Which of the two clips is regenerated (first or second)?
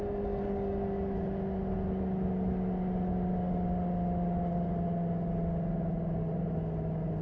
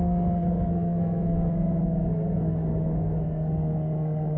second